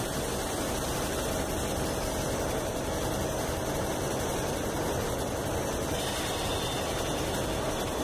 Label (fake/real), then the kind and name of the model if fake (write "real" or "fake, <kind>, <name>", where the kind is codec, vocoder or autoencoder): fake, vocoder, BigVGAN v2